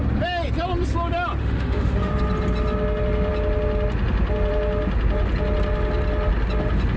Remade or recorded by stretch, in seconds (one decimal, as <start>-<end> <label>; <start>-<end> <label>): 0.0-1.4 recorded; 1.4-2.1 remade; 2.1-7.0 recorded